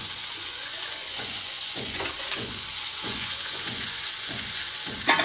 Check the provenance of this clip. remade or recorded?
remade